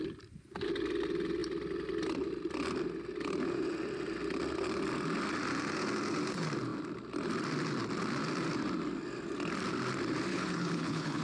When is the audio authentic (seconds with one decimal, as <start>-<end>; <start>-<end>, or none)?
0.0-10.3